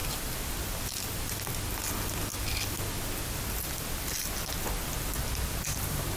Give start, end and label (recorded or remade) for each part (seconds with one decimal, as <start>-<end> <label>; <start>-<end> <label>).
0.0-6.2 recorded